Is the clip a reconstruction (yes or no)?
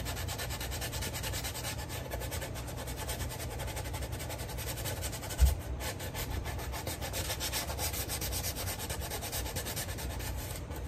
yes